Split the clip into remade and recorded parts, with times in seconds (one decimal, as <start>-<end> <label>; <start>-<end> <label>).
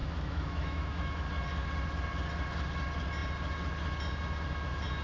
0.0-1.3 remade; 1.3-5.0 recorded